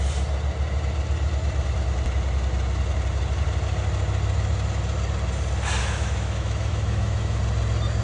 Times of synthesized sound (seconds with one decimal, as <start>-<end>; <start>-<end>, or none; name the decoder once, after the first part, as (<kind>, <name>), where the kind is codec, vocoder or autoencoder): 5.8-7.4 (autoencoder, DAC-VAE)